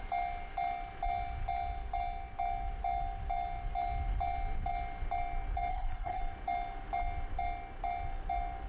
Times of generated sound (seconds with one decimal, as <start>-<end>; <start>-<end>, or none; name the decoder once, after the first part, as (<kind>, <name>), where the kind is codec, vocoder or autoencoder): 5.7-6.2 (codec, SNAC)